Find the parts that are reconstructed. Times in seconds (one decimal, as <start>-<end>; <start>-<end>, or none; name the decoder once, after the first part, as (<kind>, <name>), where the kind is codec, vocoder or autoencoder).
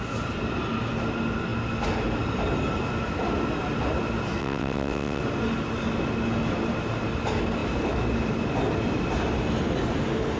4.4-5.2 (vocoder, WaveNeXt)